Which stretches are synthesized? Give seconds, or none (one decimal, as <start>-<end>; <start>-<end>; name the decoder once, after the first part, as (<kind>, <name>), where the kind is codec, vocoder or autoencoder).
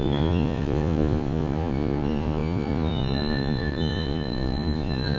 0.0-5.2 (vocoder, Vocos)